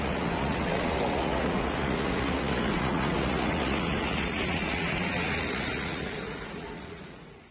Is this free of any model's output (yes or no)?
no